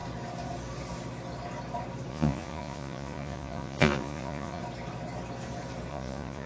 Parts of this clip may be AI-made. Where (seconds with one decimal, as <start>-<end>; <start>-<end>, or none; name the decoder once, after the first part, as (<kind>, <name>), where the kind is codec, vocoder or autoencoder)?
2.1-4.6 (vocoder, Vocos); 5.9-6.5